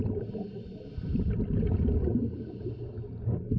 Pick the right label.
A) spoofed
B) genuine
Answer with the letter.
B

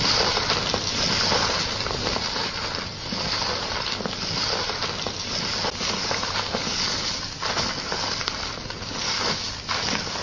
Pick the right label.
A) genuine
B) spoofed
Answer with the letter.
A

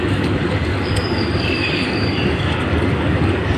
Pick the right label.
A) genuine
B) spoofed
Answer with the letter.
B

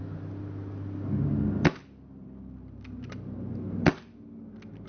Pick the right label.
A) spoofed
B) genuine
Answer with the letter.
B